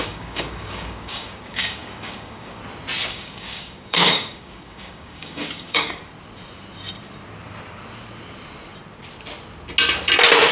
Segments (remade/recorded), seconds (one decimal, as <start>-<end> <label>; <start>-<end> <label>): 0.0-2.6 remade; 2.6-3.1 recorded; 3.1-6.0 remade; 6.0-10.5 recorded